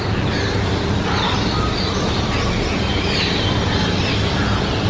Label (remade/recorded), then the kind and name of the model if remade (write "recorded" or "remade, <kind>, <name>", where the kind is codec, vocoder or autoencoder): recorded